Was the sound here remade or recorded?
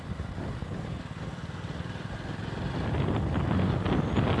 recorded